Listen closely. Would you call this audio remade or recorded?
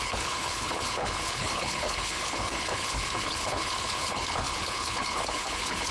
remade